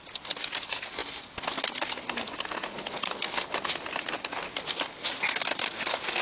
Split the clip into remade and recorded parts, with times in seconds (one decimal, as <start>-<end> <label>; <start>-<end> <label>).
0.0-6.2 recorded